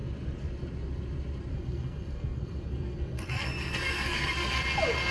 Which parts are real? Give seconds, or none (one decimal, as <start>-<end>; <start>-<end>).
0.0-1.5; 4.6-5.1